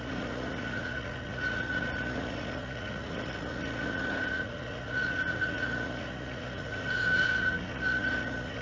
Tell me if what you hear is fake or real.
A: fake